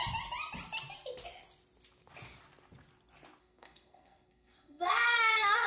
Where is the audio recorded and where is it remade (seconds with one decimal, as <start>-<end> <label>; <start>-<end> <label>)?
0.0-3.4 recorded; 3.4-5.7 remade